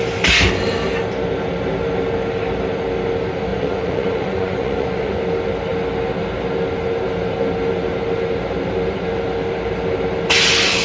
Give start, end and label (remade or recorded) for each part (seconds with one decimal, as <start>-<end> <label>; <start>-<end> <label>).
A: 0.0-3.5 recorded; 3.5-5.2 remade; 5.2-10.8 recorded